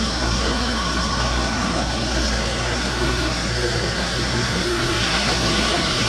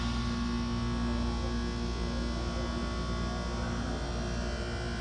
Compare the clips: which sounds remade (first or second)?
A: first